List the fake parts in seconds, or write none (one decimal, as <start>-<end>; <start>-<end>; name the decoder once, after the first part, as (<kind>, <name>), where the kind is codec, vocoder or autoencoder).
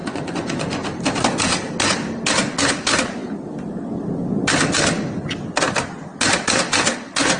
0.0-1.0 (vocoder, Vocos)